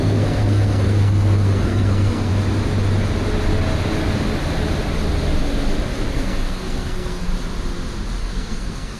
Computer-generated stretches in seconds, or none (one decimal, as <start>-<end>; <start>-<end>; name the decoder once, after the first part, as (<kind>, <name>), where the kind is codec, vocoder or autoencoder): 0.0-2.3 (codec, SNAC); 6.1-7.3; 8.2-9.0